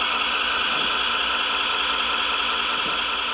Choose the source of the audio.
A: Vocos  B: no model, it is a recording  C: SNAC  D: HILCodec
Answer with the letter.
B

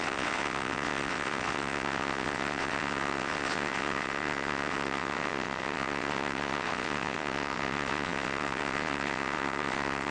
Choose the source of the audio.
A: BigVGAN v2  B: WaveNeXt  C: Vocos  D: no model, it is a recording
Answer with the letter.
B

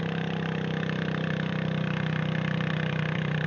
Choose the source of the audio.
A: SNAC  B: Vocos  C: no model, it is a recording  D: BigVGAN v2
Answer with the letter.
D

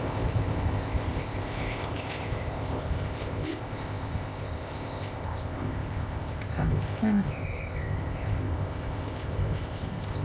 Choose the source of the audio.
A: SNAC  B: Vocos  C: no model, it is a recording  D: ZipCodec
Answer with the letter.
D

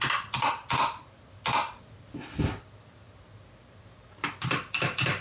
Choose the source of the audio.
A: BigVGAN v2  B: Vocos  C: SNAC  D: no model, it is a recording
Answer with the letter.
D